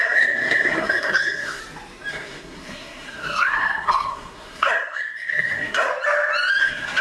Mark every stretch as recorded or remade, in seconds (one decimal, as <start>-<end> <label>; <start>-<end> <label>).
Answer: 0.0-1.6 remade; 1.6-2.1 recorded; 2.1-5.9 remade; 5.9-6.6 recorded; 6.6-7.0 remade